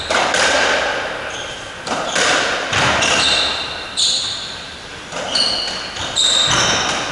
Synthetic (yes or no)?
no